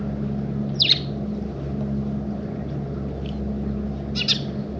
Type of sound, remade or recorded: recorded